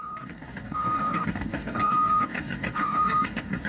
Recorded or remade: remade